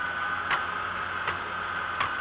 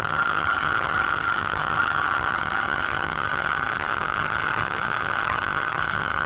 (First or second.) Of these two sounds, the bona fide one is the first